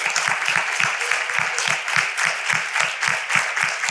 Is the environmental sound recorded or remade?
recorded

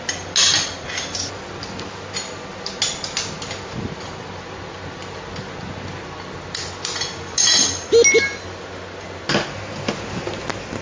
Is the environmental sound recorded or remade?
recorded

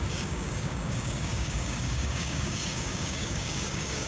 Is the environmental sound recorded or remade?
remade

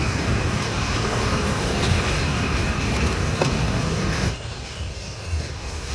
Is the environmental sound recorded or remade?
remade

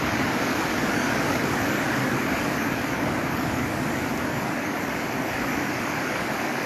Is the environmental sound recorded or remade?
remade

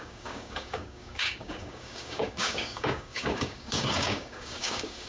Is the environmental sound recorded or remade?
remade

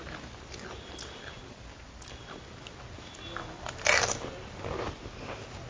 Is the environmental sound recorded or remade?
recorded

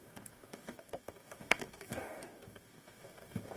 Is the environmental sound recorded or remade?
remade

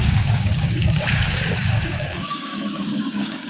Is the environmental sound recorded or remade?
remade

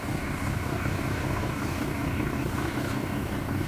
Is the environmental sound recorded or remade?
remade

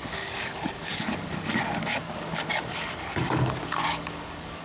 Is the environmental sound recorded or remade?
remade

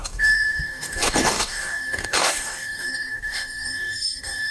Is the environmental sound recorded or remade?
remade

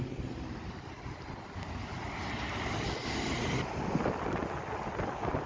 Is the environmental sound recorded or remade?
recorded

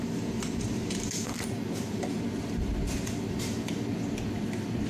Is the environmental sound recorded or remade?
recorded